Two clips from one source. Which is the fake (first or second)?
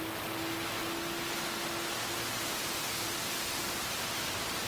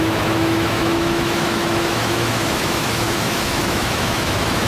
second